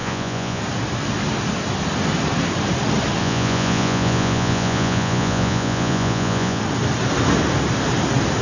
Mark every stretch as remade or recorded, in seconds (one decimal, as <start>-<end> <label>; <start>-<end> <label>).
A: 0.0-0.6 remade; 0.6-3.2 recorded; 3.2-6.6 remade; 6.6-8.4 recorded